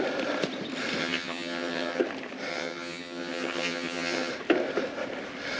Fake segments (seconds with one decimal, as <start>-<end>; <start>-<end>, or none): 1.0-2.0; 2.5-4.3

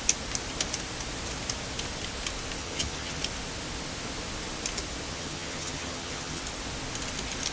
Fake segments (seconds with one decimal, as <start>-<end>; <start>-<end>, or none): 2.6-3.2; 5.1-6.4

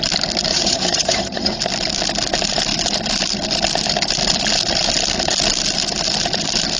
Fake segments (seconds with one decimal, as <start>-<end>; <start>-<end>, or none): 0.5-1.6

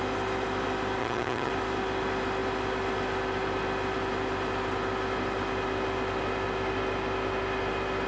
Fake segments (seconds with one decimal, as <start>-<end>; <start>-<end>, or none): 1.0-1.5

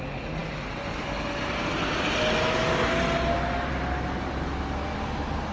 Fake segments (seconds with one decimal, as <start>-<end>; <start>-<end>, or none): none

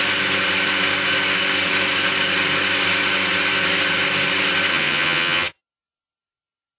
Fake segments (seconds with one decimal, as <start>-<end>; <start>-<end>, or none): 4.7-5.6